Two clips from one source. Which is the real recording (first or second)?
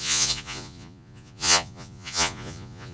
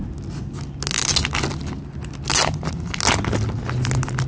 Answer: second